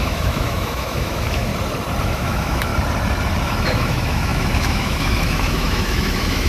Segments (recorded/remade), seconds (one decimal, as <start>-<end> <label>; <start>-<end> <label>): 0.0-1.5 remade; 1.5-2.0 recorded; 2.0-2.7 remade; 2.7-3.4 recorded; 3.4-6.5 remade